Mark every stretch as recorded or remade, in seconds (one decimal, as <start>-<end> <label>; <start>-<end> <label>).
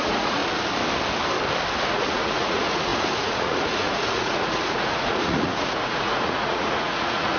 0.0-0.4 remade; 0.4-1.8 recorded; 1.8-7.4 remade